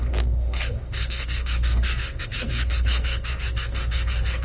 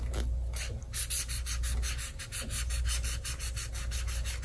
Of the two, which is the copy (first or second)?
first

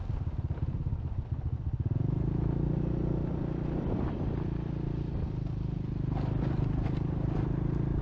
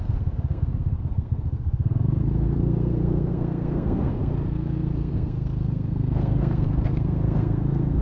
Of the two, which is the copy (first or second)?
second